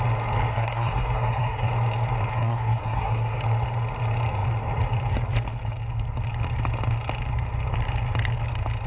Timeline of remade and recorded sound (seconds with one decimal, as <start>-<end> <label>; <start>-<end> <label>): 0.0-0.5 recorded; 0.5-1.7 remade; 1.7-2.3 recorded; 2.3-3.4 remade; 3.4-8.9 recorded